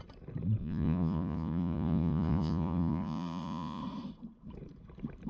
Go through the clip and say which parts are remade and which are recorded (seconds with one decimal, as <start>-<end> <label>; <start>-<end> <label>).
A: 0.0-0.6 recorded; 0.6-3.8 remade; 3.8-5.3 recorded